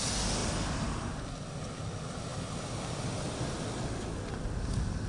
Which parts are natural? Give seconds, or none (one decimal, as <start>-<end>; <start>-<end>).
0.0-5.1